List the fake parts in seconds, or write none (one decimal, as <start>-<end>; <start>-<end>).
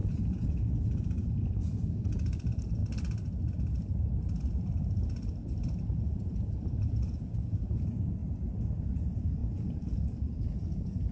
0.0-2.8; 5.8-8.2; 8.8-11.1